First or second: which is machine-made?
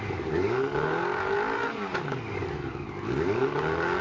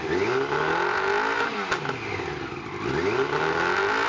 first